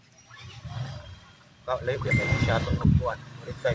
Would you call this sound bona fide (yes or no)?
no